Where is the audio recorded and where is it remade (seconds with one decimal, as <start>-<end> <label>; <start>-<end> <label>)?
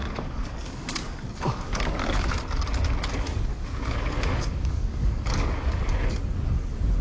0.0-2.3 remade; 2.3-3.5 recorded; 3.5-5.8 remade; 5.8-7.0 recorded